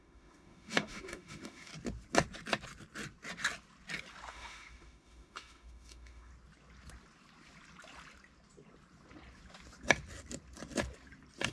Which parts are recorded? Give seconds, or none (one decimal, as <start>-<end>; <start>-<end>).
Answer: 1.7-4.3; 6.3-11.5

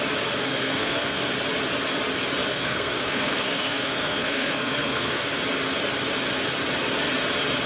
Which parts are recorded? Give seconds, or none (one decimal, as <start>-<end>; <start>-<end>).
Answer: 0.0-0.4; 1.2-2.5; 5.3-7.7

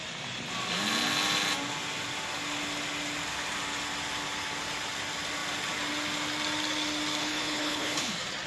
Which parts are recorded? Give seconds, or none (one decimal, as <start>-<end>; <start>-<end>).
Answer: 0.0-7.2; 8.1-8.5